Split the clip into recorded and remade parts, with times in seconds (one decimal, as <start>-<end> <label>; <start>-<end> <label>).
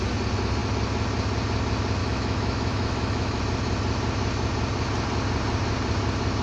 0.0-2.0 recorded; 2.0-3.4 remade; 3.4-6.4 recorded